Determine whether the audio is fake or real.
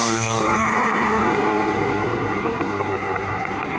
fake